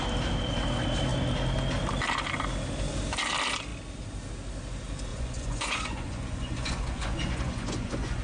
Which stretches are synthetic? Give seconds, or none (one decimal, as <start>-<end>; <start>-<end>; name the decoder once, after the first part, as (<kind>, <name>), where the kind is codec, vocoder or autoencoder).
5.1-8.2 (vocoder, Vocos)